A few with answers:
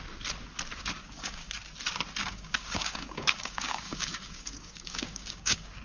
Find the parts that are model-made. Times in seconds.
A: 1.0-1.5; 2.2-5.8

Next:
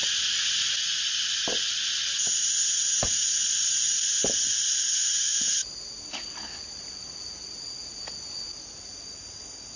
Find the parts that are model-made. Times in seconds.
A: none

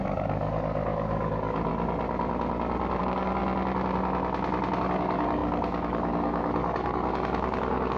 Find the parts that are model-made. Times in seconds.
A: 0.0-1.7; 3.0-3.4; 4.8-8.0

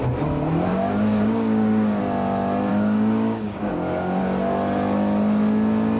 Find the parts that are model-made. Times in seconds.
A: 0.7-2.0; 2.7-4.2

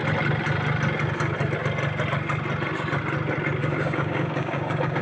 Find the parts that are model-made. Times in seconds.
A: 3.6-5.0